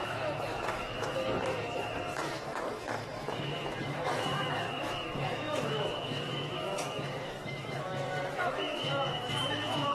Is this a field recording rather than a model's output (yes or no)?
no